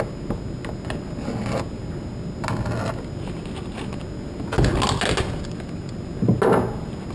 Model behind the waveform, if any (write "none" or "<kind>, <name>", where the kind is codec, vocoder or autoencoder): none